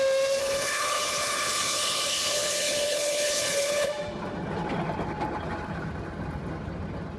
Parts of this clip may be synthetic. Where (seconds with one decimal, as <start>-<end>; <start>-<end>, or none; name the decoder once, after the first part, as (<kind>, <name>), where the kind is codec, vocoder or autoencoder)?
0.4-3.9 (codec, HILCodec)